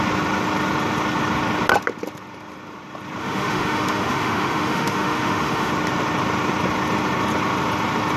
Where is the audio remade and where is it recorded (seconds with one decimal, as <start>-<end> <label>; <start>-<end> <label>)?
0.0-3.2 recorded; 3.2-5.7 remade; 5.7-8.2 recorded